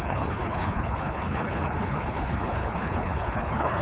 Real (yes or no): no